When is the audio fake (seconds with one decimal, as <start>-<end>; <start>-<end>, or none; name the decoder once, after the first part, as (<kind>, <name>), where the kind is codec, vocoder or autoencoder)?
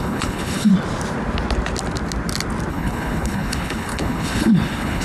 0.0-0.7 (codec, HILCodec); 2.7-5.0